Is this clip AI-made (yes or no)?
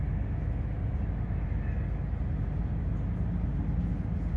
no